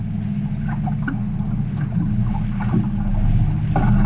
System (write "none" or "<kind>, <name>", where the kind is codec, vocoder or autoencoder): none